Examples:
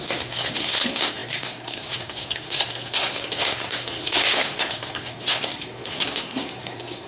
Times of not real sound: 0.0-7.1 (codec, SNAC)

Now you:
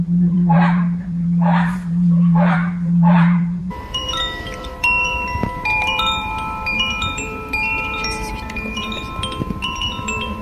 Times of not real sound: 0.0-10.4 (vocoder, BigVGAN v2)

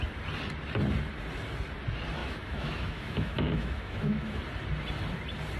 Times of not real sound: 2.2-4.4 (autoencoder, DAC-VAE)

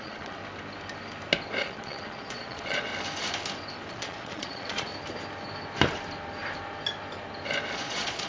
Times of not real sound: 0.0-0.4 (vocoder, Vocos); 1.6-2.9; 3.9-4.9; 7.7-8.3

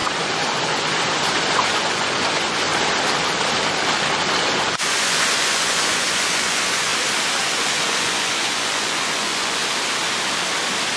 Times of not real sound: 0.0-2.7 (vocoder, Vocos); 4.4-6.9; 7.4-9.6